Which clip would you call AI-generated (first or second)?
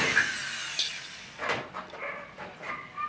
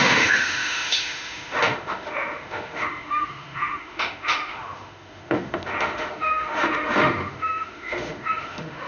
second